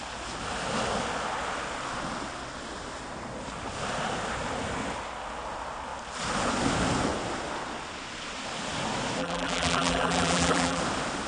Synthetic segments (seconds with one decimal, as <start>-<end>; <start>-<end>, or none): 9.2-10.8